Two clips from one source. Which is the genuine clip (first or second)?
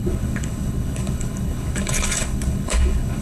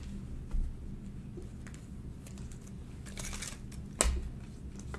second